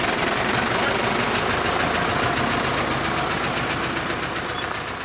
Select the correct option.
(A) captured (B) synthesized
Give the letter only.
A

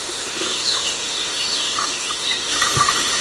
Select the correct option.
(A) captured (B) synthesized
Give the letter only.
B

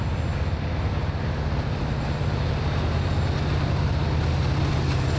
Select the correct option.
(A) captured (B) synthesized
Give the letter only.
A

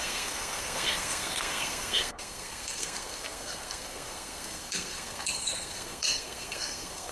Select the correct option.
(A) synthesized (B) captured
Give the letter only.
A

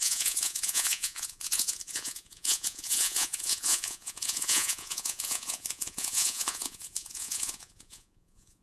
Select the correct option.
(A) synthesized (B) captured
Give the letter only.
A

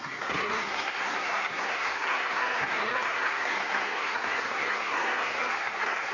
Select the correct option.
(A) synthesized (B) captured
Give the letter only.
A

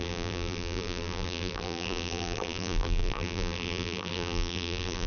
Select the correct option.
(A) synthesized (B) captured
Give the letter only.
A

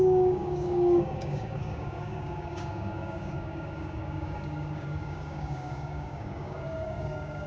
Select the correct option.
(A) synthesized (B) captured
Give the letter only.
A